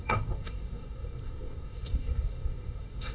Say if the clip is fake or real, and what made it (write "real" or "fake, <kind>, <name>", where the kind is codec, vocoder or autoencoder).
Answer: fake, codec, SNAC